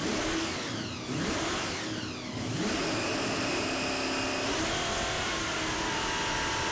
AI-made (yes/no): no